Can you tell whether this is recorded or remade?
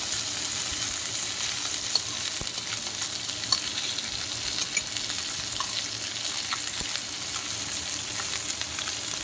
recorded